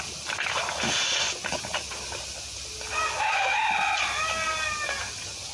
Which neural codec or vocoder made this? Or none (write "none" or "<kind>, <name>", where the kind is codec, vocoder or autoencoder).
none